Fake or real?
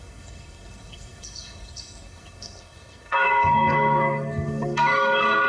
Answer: fake